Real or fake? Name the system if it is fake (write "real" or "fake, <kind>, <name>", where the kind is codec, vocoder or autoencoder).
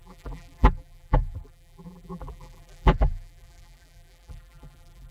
fake, vocoder, BigVGAN v2